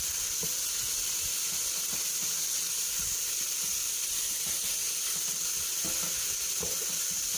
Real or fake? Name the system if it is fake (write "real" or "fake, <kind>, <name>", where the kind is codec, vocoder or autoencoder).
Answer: real